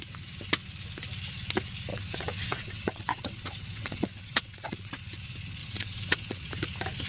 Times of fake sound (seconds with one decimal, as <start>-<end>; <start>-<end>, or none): 1.9-4.9; 5.6-6.5